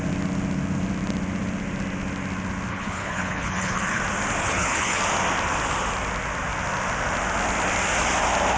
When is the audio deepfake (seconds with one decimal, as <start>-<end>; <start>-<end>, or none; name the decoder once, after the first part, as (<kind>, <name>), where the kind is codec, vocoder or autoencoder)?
2.7-4.0 (codec, HILCodec); 4.4-5.0